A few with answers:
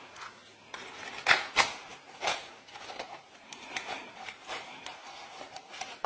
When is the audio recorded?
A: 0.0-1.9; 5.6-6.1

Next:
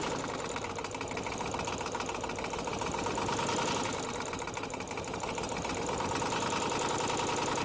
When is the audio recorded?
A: 0.0-7.6